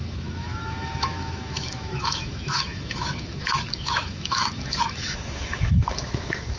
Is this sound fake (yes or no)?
yes